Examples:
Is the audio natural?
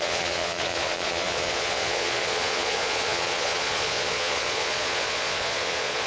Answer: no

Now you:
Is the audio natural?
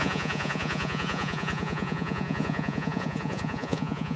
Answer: no